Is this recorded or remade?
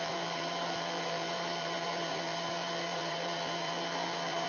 remade